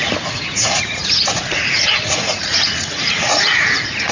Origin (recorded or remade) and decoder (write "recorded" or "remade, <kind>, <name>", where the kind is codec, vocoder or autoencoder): remade, vocoder, Vocos